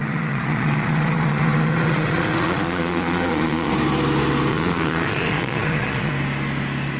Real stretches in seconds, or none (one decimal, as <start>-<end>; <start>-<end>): 3.7-4.5; 6.1-7.0

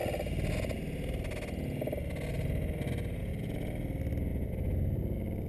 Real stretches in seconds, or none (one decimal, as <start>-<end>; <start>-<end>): 0.0-4.3; 5.0-5.5

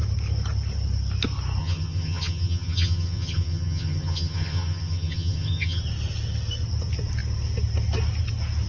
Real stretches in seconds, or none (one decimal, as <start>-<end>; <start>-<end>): 0.0-1.6; 5.8-8.7